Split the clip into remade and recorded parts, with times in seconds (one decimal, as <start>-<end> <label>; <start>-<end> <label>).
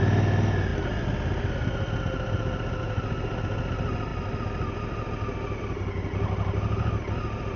0.0-7.6 recorded